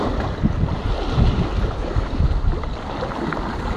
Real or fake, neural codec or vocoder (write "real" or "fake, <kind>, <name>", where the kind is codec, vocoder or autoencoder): real